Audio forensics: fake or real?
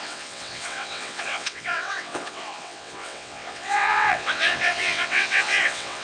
fake